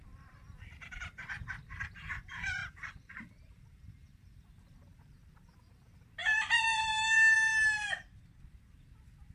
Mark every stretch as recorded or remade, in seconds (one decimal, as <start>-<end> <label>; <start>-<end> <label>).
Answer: 0.0-6.2 remade; 6.2-6.8 recorded; 6.8-7.5 remade; 7.5-8.4 recorded; 8.4-9.3 remade